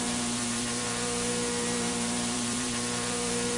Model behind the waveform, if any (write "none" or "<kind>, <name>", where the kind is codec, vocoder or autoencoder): vocoder, BigVGAN v2